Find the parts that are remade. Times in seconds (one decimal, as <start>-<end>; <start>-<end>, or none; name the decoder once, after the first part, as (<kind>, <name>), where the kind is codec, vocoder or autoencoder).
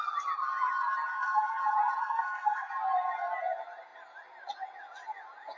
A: 1.1-1.6 (codec, SNAC); 2.0-2.7